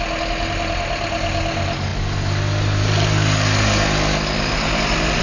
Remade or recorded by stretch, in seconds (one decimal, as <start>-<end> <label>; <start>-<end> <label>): 0.0-5.2 recorded

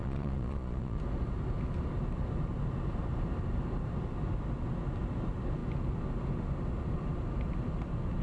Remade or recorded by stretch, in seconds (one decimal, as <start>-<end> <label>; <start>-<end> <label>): 0.0-1.0 remade; 1.0-8.2 recorded

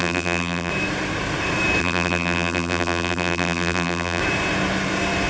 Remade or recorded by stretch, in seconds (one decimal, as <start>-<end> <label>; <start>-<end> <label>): 0.0-0.7 remade; 0.7-1.8 recorded; 1.8-4.2 remade; 4.2-5.3 recorded